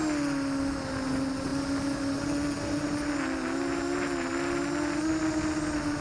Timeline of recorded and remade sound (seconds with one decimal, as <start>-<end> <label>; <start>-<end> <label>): 0.0-6.0 recorded